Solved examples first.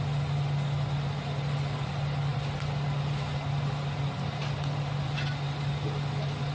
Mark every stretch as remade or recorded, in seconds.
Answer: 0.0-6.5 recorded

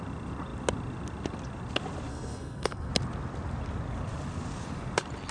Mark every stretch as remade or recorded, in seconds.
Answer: 0.0-2.1 recorded; 2.1-2.9 remade; 2.9-5.3 recorded

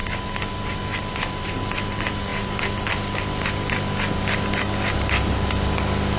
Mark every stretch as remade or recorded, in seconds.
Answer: 0.0-6.2 recorded